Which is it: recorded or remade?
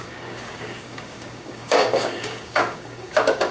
remade